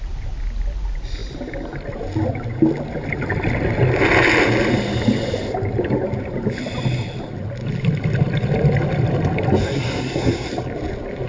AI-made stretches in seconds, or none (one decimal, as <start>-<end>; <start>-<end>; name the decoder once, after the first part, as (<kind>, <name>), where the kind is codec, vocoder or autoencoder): 9.6-10.5 (codec, SNAC)